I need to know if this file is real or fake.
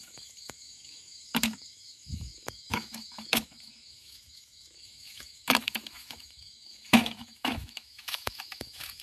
fake